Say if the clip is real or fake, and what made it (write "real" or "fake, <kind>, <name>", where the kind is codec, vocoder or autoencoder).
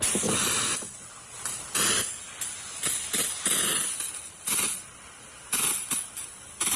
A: real